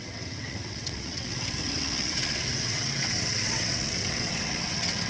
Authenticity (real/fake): fake